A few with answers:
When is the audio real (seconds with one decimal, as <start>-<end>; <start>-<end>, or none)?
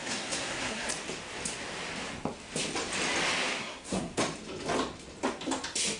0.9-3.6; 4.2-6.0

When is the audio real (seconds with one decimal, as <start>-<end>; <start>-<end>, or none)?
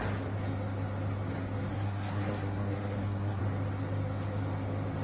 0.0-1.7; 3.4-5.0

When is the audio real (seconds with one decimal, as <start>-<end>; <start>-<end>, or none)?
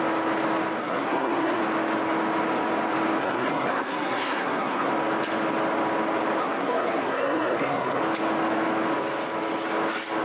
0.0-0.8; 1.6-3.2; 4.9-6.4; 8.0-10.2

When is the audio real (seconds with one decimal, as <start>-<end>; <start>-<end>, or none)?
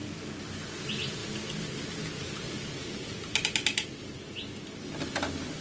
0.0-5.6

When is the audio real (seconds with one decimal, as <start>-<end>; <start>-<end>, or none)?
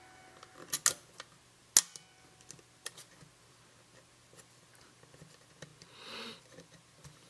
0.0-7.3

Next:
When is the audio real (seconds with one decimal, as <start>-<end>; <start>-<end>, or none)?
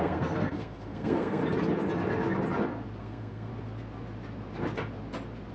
1.4-3.0; 3.5-5.5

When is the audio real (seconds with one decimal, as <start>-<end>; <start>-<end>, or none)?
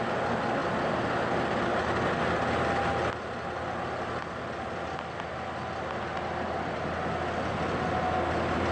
0.0-8.7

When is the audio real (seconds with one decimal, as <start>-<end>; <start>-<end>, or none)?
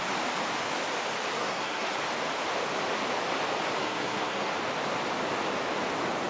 0.0-1.4; 2.0-3.8; 4.5-6.3